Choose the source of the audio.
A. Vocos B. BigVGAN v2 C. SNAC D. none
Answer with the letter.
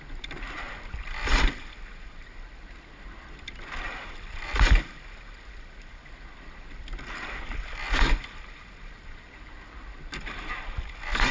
D